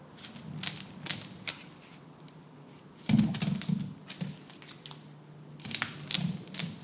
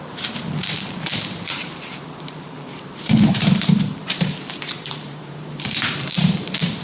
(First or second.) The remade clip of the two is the second